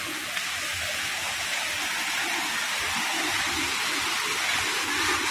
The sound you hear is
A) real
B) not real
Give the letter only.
A